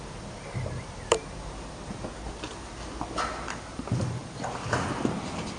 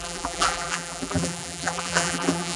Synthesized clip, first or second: second